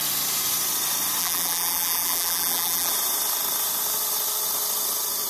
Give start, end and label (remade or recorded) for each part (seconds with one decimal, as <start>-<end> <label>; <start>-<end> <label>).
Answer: 0.0-1.2 recorded; 1.2-2.9 remade; 2.9-5.3 recorded